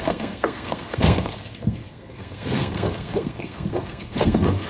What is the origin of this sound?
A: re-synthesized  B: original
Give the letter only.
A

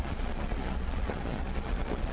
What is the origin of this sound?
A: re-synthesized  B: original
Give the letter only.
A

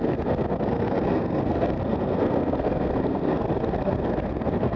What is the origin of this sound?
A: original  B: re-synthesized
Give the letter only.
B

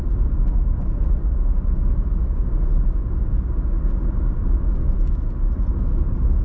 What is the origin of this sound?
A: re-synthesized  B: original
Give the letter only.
B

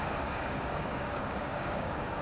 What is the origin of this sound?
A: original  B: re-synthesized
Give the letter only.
B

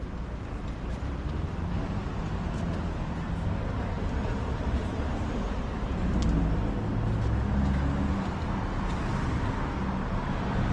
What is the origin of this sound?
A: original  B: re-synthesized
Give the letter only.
A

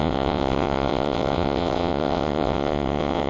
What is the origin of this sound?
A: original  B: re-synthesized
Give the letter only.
B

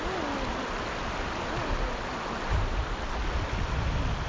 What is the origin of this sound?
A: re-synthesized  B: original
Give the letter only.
B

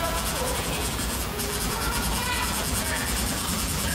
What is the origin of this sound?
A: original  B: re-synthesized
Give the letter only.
B